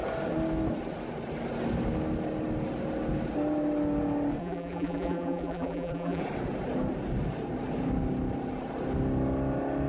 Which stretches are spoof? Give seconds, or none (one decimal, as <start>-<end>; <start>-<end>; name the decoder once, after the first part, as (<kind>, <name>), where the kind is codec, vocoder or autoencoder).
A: 4.4-6.2 (vocoder, BigVGAN v2)